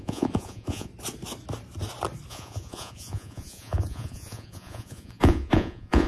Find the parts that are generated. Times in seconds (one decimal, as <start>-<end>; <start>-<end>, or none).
0.0-0.9; 2.3-6.1